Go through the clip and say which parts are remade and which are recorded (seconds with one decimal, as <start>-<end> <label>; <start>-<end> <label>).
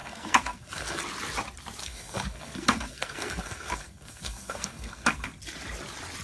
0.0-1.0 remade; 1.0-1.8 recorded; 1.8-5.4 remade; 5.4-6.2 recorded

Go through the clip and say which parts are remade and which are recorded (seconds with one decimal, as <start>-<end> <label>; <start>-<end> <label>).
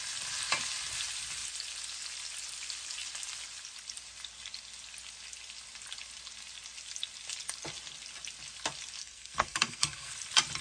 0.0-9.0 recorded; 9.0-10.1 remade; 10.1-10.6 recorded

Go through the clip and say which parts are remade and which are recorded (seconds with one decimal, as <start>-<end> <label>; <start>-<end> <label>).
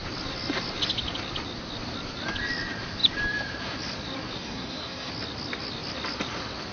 0.0-4.4 recorded; 4.4-5.1 remade; 5.1-6.7 recorded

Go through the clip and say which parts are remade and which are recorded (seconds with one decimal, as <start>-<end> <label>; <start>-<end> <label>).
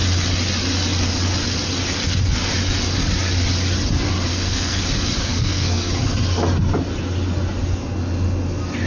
0.0-4.3 recorded; 4.3-4.8 remade; 4.8-5.2 recorded; 5.2-5.9 remade; 5.9-8.9 recorded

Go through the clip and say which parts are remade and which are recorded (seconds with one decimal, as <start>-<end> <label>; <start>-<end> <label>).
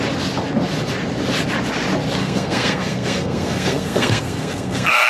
0.0-2.2 recorded; 2.2-5.1 remade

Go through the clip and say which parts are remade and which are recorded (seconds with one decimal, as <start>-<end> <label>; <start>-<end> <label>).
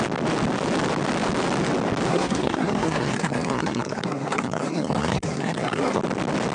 0.0-2.1 recorded; 2.1-6.0 remade; 6.0-6.5 recorded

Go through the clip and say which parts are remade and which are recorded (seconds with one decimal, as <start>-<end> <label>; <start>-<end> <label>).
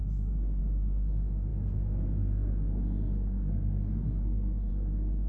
0.0-0.6 remade; 0.6-1.1 recorded; 1.1-5.3 remade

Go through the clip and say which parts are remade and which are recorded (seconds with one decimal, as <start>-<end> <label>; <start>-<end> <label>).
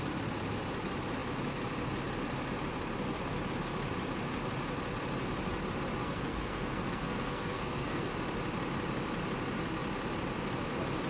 0.0-6.0 recorded; 6.0-8.1 remade; 8.1-11.1 recorded